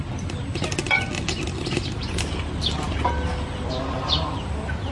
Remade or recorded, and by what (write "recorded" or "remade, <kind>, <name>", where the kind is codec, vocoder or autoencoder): recorded